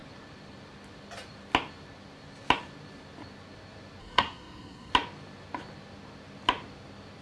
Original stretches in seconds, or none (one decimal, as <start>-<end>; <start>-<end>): 0.0-4.0; 4.9-7.2